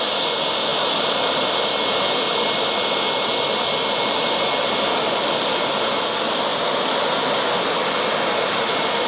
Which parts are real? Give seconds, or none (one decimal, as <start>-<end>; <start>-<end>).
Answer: 0.0-9.1